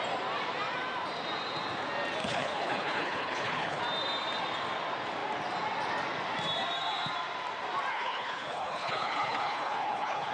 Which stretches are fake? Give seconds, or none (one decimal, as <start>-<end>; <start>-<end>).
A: 2.2-3.8; 7.9-10.3